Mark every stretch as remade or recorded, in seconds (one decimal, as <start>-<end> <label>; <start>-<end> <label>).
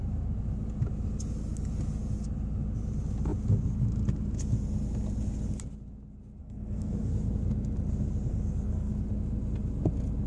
0.0-6.4 recorded; 6.4-7.1 remade; 7.1-8.3 recorded; 8.3-8.9 remade; 8.9-10.3 recorded